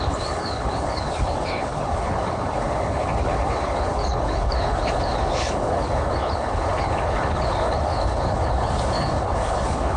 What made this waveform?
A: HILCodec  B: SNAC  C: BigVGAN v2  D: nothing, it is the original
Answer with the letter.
A